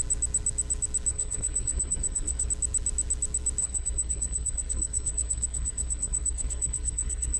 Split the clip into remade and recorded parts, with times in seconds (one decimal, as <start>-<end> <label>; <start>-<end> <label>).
0.0-1.1 recorded; 1.1-2.5 remade; 2.5-3.6 recorded; 3.6-7.4 remade